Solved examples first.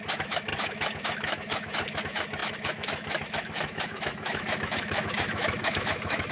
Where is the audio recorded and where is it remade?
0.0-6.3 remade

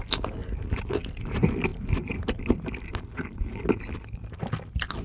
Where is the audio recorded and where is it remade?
0.0-5.0 recorded

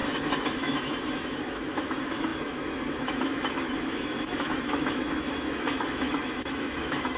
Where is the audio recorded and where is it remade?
0.0-7.2 remade

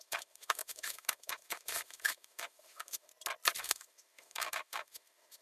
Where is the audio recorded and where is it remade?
0.0-3.1 remade; 3.1-3.6 recorded; 3.6-5.4 remade

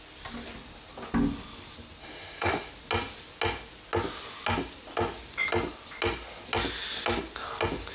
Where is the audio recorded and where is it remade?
0.0-2.0 recorded; 2.0-2.7 remade; 2.7-7.9 recorded

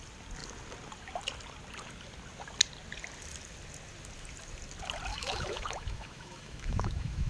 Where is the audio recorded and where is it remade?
0.0-5.1 recorded; 5.1-7.3 remade